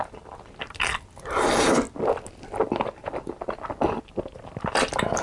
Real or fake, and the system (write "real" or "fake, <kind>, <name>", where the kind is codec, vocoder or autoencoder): real